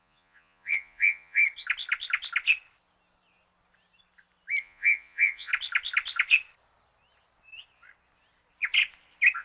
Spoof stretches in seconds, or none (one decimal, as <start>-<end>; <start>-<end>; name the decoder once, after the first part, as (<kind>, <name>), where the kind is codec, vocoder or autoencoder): 0.0-1.4 (vocoder, Vocos); 4.6-5.5